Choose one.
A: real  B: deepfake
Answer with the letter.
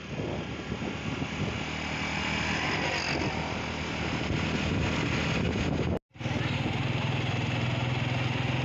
A